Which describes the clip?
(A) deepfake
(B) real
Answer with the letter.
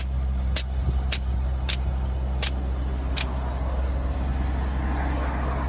B